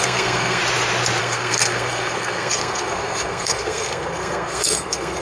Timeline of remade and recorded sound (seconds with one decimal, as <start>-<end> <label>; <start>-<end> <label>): 0.0-0.6 remade; 0.6-1.2 recorded; 1.2-5.2 remade